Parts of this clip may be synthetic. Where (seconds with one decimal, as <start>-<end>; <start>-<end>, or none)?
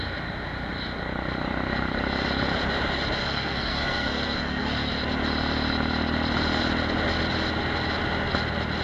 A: 3.2-4.9